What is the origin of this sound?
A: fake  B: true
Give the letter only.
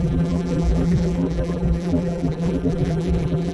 A